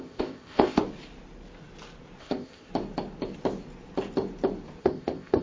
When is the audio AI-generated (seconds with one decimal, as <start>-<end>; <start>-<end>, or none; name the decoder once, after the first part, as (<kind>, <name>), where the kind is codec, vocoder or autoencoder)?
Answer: 0.0-0.8 (codec, ZipCodec); 2.2-2.7; 4.8-5.4